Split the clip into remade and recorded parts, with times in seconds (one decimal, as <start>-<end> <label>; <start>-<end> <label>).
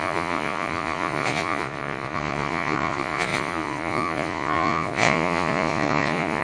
0.0-6.4 remade